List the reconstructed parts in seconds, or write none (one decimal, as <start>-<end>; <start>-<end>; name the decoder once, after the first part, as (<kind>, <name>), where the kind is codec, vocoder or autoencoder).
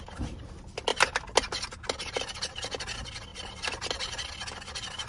none